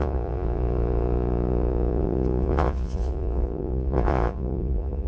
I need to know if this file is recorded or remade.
remade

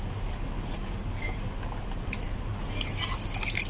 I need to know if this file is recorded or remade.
recorded